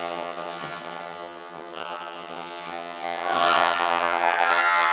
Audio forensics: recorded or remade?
remade